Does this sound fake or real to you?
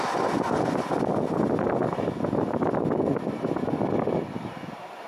real